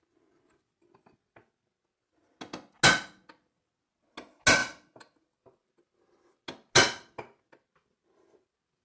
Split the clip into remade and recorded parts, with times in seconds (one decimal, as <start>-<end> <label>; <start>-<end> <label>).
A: 0.0-8.8 recorded